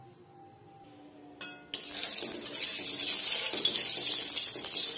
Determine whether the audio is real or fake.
real